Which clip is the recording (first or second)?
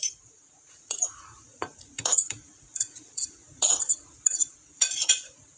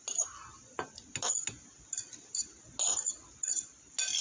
second